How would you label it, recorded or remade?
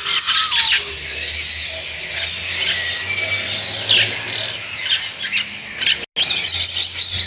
recorded